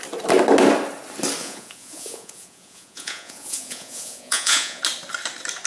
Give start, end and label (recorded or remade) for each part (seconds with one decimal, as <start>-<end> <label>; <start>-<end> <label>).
0.0-1.4 recorded; 1.4-4.8 remade; 4.8-5.7 recorded